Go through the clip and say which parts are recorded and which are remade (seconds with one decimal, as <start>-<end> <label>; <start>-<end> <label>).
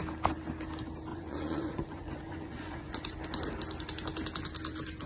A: 0.0-1.1 recorded; 1.1-2.9 remade; 2.9-5.1 recorded